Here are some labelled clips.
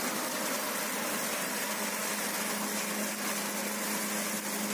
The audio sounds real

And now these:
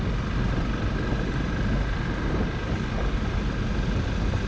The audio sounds real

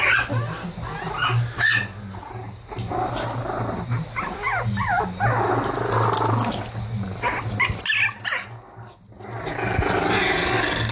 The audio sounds real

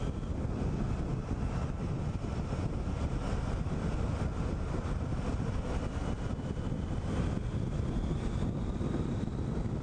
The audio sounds real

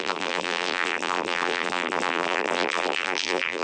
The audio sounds fake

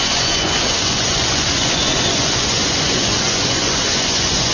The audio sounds fake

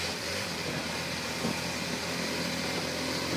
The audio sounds real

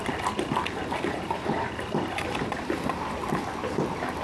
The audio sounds real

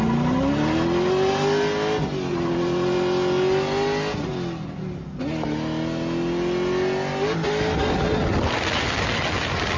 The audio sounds real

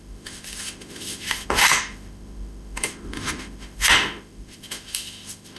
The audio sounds fake